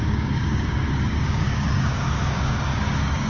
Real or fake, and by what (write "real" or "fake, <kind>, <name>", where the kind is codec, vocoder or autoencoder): fake, codec, DAC